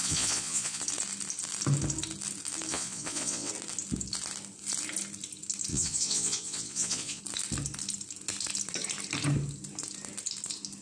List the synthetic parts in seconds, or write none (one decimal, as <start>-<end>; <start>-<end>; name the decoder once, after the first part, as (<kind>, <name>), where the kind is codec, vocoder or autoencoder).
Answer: 0.0-0.8 (vocoder, Vocos); 2.7-3.5; 5.7-7.2